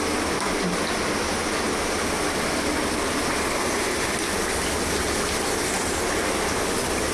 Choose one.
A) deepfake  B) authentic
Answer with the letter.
B